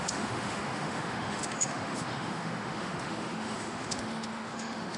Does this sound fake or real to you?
fake